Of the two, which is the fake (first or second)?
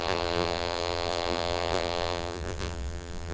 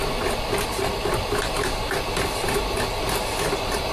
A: first